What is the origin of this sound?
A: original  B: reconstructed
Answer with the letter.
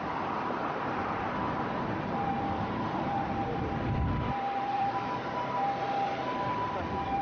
B